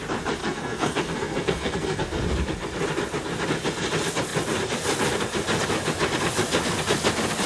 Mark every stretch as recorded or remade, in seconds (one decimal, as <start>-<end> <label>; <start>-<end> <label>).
0.0-0.4 recorded; 0.4-2.2 remade; 2.2-7.5 recorded